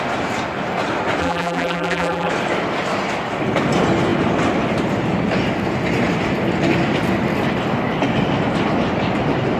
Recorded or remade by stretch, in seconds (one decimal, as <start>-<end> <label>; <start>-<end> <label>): 0.0-1.2 recorded; 1.2-2.3 remade; 2.3-9.6 recorded